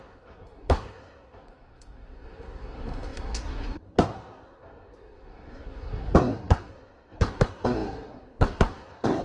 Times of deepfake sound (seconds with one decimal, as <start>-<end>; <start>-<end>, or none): 0.0-9.2